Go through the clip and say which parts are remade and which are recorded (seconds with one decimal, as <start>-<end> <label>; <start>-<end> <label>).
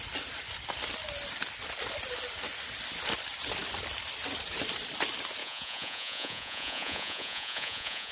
0.0-5.4 recorded; 5.4-8.1 remade